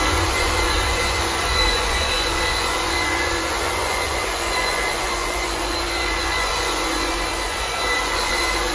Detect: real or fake fake